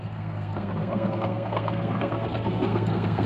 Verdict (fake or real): fake